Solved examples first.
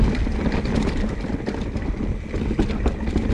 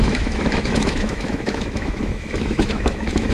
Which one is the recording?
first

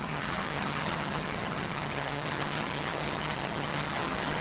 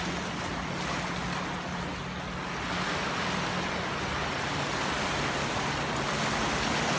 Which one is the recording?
second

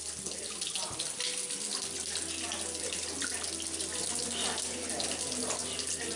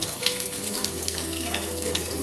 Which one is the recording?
first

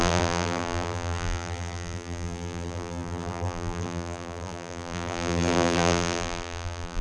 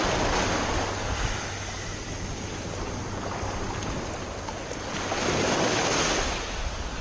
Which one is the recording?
second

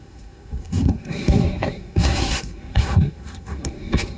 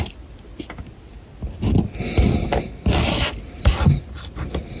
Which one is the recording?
second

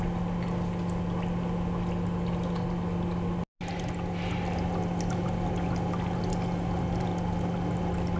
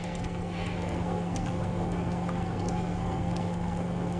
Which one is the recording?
first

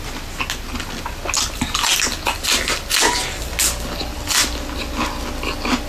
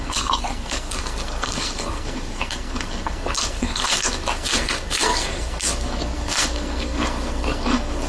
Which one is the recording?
first